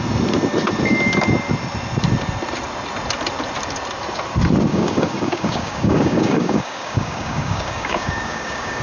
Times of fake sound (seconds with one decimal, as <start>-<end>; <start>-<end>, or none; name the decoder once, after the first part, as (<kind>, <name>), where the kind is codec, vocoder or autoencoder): 4.7-8.8 (codec, DAC)